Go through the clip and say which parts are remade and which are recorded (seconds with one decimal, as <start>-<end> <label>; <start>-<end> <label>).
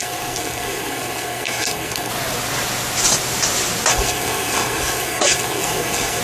0.0-2.1 remade; 2.1-3.9 recorded; 3.9-6.2 remade